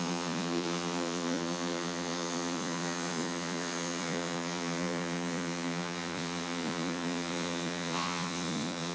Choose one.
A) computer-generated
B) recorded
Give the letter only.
A